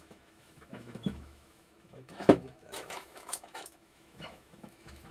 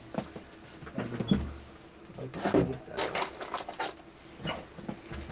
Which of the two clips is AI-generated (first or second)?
first